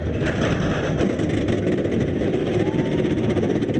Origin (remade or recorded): recorded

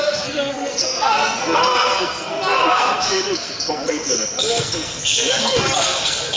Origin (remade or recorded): remade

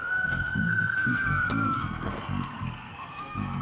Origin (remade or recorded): remade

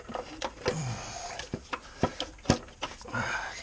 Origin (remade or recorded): recorded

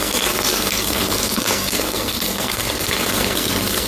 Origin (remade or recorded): remade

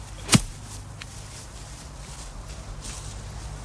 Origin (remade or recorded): recorded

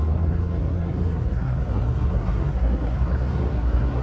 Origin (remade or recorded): remade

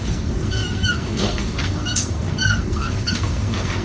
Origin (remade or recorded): remade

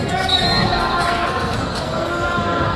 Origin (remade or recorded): remade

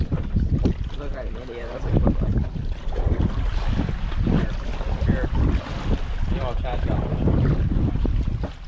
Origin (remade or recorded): recorded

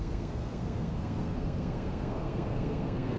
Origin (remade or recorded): remade